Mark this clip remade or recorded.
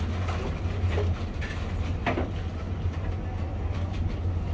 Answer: recorded